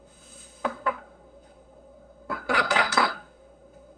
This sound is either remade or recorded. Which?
remade